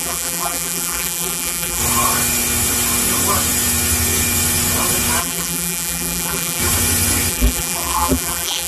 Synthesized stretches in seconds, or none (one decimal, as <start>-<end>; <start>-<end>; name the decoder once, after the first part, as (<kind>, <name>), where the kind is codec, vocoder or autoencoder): 0.0-1.8 (vocoder, BigVGAN v2); 5.2-6.6; 7.3-8.7

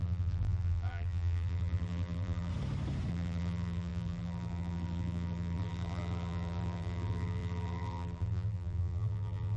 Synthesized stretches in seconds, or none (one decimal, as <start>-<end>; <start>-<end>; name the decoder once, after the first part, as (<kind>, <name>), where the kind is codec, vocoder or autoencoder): 0.0-2.5 (vocoder, BigVGAN v2); 3.1-9.6